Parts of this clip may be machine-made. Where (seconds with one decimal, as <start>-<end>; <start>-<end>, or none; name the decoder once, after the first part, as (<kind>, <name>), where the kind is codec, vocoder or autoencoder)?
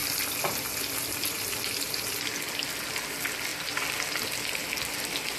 0.0-2.1 (vocoder, BigVGAN v2)